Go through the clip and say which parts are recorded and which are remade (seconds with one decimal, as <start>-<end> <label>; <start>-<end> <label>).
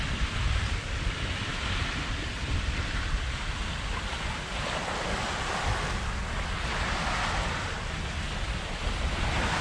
0.0-1.5 recorded; 1.5-2.1 remade; 2.1-9.6 recorded